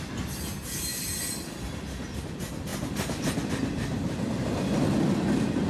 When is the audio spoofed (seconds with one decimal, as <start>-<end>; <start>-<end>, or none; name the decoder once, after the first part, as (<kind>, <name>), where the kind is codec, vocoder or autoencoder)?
none